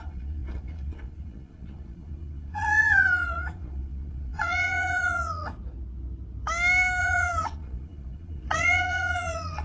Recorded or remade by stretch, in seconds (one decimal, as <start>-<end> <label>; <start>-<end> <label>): 0.0-5.5 remade; 5.5-7.0 recorded; 7.0-9.6 remade